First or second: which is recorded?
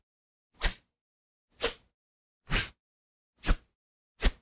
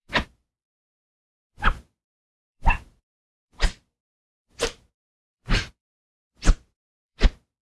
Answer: first